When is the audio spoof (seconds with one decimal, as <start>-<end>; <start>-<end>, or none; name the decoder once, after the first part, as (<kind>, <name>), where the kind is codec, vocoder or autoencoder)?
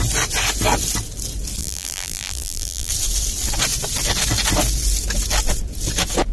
1.6-2.9 (vocoder, BigVGAN v2)